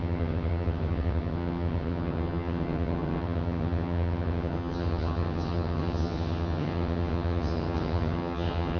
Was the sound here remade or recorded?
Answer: remade